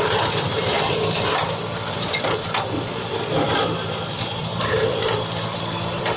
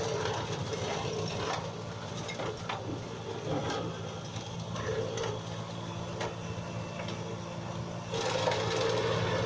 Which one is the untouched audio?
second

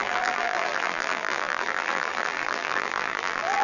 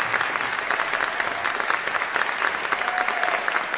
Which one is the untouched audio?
second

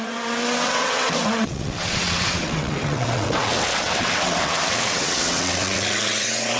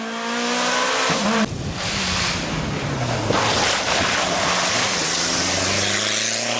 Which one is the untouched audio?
second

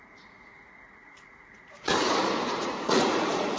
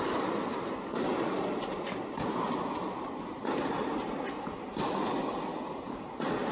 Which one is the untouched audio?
second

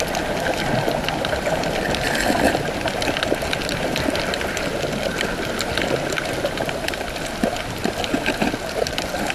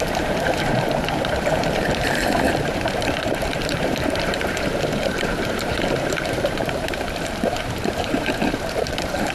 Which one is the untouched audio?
first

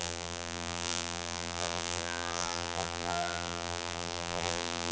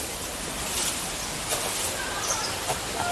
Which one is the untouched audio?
second